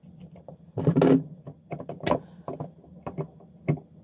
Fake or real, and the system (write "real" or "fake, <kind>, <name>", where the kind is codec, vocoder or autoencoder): real